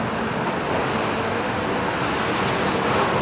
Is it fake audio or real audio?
real